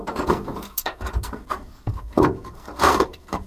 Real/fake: fake